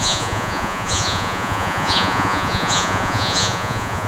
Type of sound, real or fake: fake